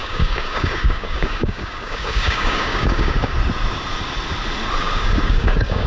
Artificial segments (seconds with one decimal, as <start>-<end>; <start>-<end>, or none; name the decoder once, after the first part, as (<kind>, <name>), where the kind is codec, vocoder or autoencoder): 0.0-3.3 (codec, DAC); 4.8-5.9